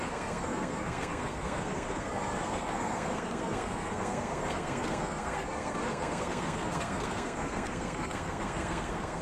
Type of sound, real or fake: fake